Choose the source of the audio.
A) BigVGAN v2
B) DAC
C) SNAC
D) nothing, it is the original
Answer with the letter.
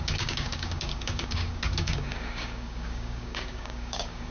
B